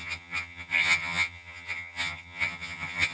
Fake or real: fake